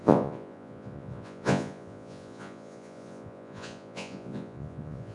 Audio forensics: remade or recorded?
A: remade